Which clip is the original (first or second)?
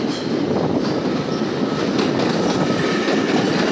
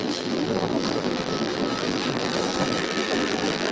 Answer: first